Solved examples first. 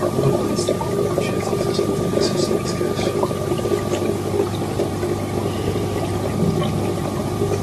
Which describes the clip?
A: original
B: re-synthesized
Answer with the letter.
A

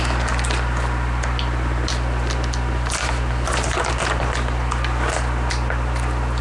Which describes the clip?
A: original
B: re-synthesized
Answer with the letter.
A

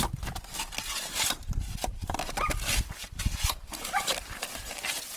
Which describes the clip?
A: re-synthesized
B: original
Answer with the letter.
A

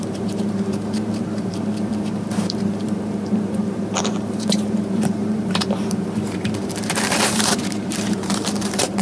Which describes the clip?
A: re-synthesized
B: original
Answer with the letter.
A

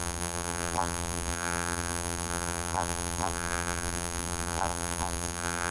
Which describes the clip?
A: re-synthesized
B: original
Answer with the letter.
A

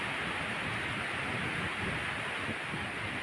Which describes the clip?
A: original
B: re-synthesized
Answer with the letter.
A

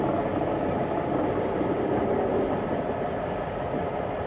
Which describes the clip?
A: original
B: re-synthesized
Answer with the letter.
A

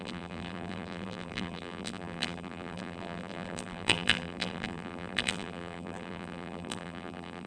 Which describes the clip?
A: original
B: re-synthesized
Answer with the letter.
B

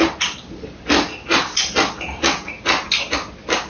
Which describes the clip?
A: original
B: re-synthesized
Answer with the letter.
A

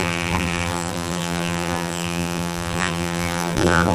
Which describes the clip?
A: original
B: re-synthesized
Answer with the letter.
B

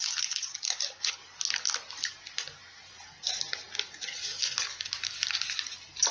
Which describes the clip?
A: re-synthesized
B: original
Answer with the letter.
B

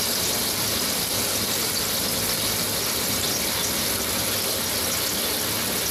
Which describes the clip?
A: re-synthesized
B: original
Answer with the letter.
B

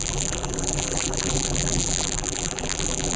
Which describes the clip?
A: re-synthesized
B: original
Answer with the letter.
A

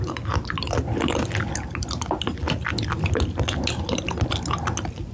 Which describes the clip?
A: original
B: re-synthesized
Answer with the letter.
A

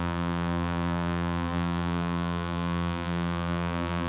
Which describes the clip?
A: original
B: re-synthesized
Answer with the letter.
B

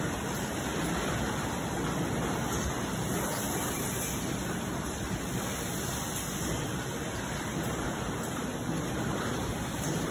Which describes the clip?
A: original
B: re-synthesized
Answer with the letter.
B